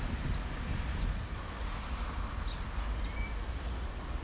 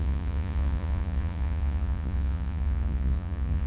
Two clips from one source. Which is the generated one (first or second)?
second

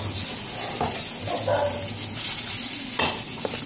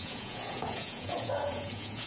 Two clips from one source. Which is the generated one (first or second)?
second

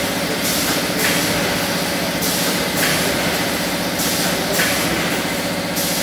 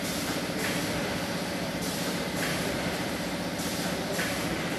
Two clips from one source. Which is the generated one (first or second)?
second